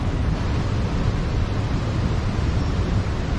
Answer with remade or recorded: recorded